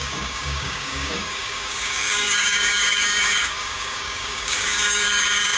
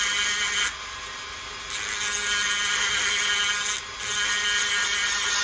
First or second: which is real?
second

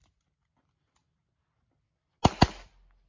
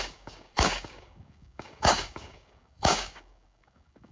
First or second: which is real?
first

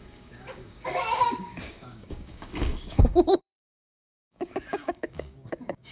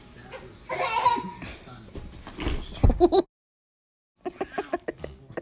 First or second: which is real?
second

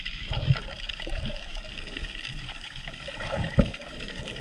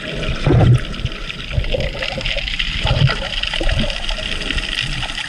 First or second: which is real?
second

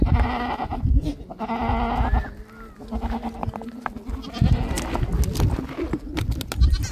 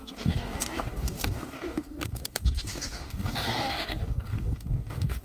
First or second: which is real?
first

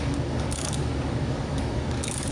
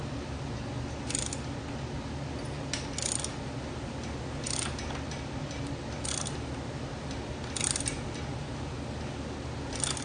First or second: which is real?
second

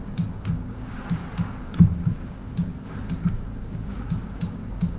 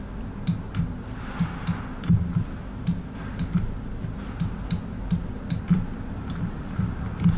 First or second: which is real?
second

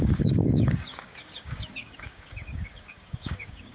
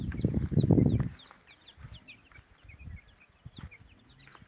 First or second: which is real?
second